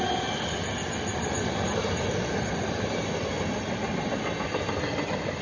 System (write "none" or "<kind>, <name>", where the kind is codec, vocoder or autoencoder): none